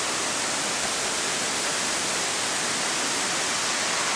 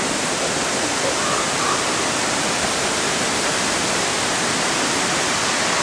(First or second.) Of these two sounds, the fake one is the second